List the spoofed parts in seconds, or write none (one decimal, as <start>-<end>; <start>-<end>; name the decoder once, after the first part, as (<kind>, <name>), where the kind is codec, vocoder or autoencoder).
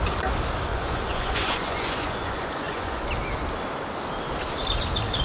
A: 0.7-3.1 (vocoder, Vocos)